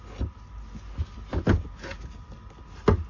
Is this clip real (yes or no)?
yes